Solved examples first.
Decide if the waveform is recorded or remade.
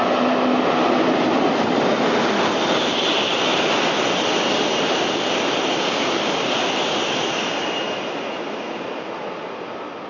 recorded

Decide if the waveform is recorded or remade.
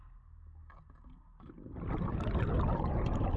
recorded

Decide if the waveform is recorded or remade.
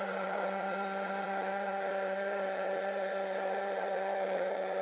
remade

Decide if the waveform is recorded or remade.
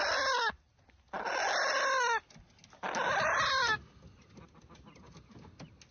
recorded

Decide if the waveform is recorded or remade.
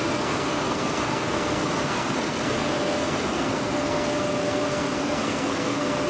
remade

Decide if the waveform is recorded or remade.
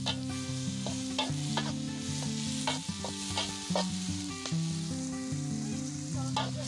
recorded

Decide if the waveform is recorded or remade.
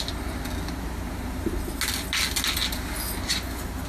recorded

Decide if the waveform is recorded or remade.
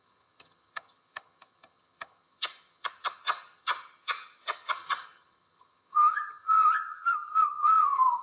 remade